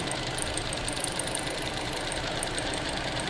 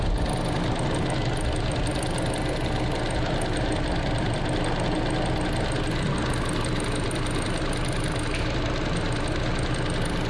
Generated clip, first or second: first